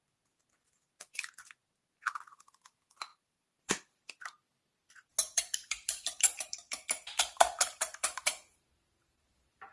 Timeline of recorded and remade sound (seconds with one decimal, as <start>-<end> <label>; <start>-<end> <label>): 0.0-3.1 recorded; 3.1-4.1 remade; 4.1-5.1 recorded; 5.1-9.7 remade